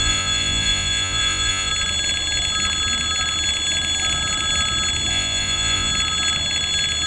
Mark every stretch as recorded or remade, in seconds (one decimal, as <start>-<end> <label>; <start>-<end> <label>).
0.0-1.7 remade; 1.7-5.1 recorded; 5.1-5.9 remade; 5.9-7.1 recorded